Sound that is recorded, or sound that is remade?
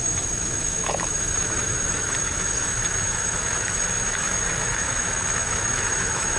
remade